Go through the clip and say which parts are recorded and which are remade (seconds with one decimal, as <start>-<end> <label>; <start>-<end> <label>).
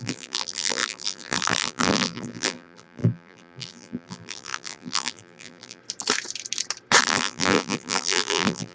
0.0-5.8 remade; 5.8-7.0 recorded; 7.0-8.7 remade